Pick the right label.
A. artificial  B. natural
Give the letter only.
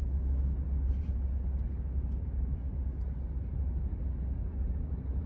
B